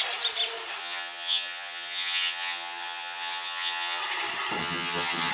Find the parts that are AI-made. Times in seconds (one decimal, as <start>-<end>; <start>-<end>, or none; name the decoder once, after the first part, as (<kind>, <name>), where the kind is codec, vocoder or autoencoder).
0.8-4.0 (vocoder, HiFi-GAN); 4.6-5.3